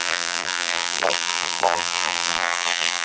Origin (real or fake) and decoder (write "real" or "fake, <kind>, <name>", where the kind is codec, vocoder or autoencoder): fake, vocoder, BigVGAN v2